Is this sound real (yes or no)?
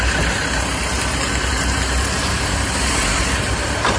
yes